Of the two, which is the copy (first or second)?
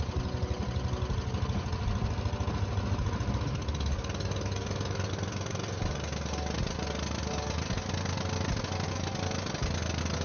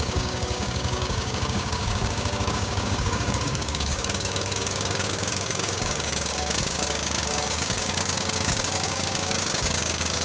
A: second